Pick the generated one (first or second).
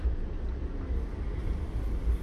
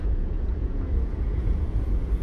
second